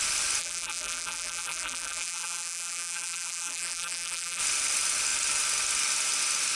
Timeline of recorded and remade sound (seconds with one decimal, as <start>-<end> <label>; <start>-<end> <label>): 0.0-0.4 recorded; 0.4-4.4 remade; 4.4-6.6 recorded